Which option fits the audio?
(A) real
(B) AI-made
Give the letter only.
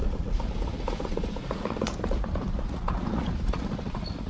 B